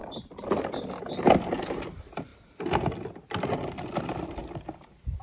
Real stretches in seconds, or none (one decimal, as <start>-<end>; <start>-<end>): 0.0-5.2